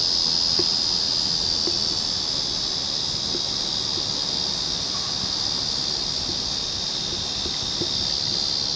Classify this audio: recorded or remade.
recorded